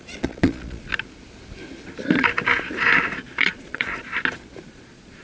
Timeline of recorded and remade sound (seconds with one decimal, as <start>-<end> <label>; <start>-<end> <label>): 0.0-0.9 remade; 0.9-3.4 recorded; 3.4-3.9 remade; 3.9-4.6 recorded; 4.6-5.2 remade